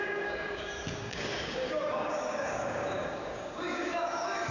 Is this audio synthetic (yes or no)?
yes